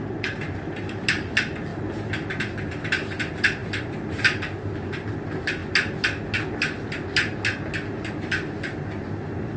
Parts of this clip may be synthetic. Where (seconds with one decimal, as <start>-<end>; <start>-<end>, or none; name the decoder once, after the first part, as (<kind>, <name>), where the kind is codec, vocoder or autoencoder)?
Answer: none